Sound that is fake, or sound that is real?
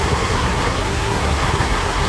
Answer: fake